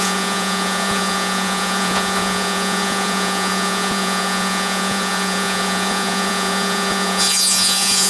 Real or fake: fake